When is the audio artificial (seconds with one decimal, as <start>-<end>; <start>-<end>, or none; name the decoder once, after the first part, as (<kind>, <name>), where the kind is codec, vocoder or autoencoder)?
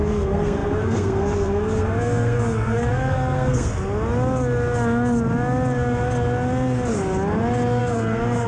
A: 0.0-3.7 (codec, SNAC); 7.8-8.5